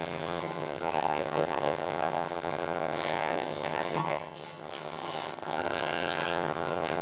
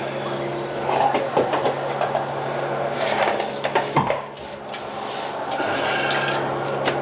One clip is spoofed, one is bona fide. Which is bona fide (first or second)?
second